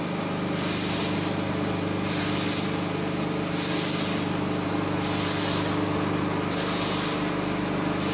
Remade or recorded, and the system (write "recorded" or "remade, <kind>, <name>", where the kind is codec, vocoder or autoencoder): recorded